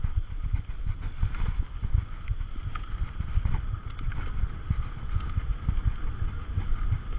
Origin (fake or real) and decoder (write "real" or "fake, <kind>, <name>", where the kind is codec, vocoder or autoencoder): real